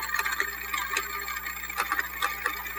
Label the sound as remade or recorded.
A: recorded